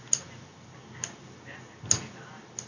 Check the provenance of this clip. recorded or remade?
recorded